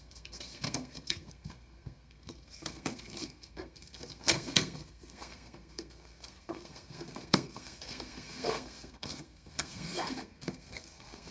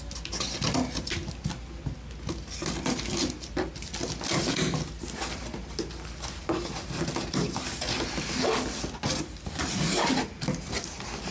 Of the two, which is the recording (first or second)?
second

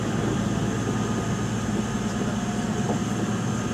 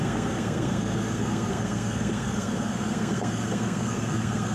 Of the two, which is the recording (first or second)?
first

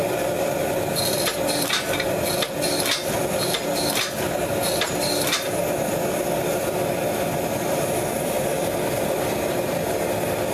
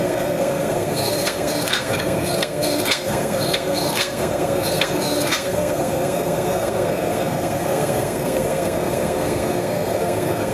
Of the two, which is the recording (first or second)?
first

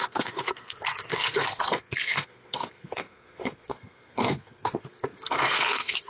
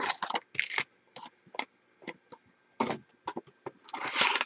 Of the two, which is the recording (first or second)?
second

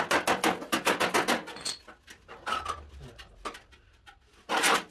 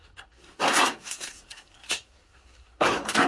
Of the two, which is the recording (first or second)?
first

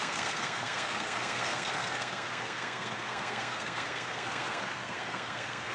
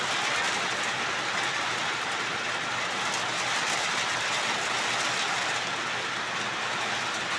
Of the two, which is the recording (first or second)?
second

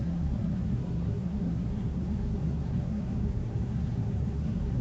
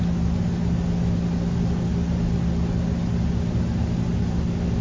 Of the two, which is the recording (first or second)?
second